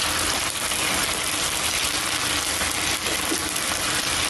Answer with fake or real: real